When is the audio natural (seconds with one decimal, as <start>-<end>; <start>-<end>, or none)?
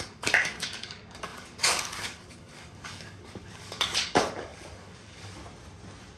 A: 5.4-6.2